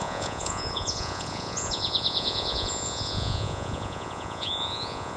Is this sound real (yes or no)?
no